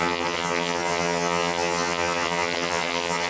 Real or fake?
fake